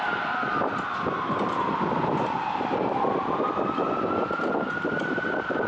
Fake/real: real